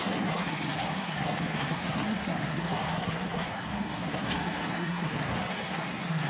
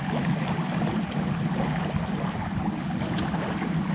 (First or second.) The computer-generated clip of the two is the first